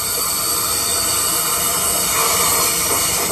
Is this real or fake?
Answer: real